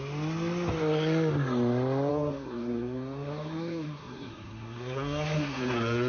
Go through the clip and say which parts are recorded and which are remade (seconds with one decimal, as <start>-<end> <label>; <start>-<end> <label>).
0.0-2.1 recorded; 2.1-6.1 remade